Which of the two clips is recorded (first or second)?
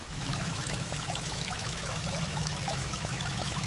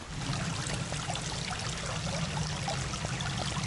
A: second